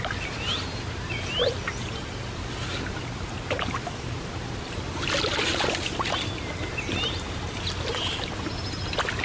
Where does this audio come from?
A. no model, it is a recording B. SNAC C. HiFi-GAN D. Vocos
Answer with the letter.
A